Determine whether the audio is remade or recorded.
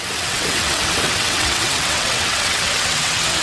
remade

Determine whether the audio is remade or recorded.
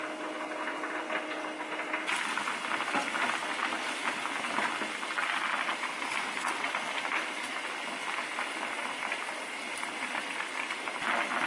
recorded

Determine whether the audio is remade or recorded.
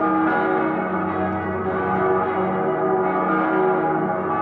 recorded